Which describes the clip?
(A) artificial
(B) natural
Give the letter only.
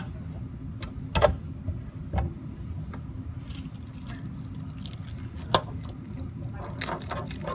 B